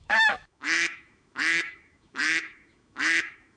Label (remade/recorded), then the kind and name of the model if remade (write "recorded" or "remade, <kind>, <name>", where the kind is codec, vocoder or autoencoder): remade, autoencoder, DAC-VAE